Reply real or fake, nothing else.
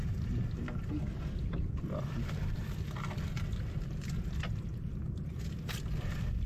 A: real